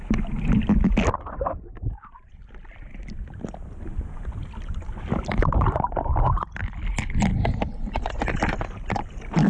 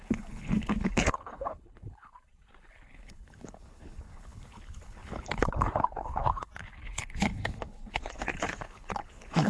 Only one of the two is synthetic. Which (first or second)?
second